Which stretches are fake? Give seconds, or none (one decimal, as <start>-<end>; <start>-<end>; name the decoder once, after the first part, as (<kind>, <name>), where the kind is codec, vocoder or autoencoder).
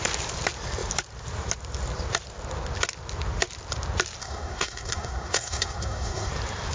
4.2-6.3 (codec, SNAC)